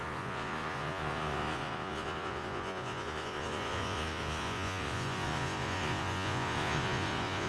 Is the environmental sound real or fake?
fake